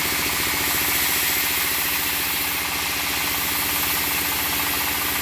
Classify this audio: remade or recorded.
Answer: recorded